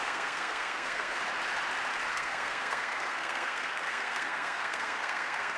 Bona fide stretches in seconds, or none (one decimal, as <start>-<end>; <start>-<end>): 1.2-2.1